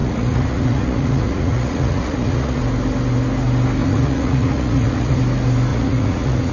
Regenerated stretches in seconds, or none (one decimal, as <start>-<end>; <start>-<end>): 0.0-2.6; 3.8-5.2; 5.7-6.5